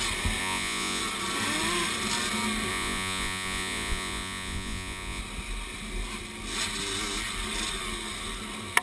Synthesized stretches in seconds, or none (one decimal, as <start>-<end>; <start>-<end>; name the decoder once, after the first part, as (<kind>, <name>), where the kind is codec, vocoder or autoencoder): 0.4-1.0 (vocoder, Vocos); 2.7-5.2